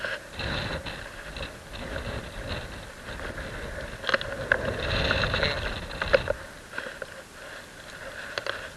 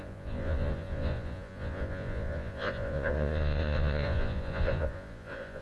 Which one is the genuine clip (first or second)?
first